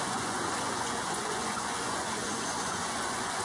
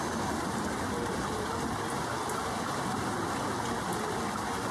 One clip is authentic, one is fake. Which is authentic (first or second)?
second